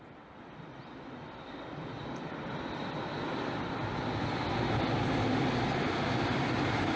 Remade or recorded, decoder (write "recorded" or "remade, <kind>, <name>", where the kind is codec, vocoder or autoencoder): recorded